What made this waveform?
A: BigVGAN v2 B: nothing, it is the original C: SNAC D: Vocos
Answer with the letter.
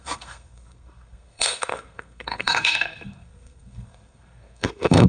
C